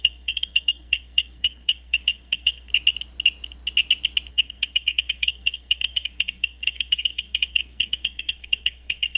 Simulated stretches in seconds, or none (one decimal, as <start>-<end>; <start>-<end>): 0.0-2.7; 4.3-9.2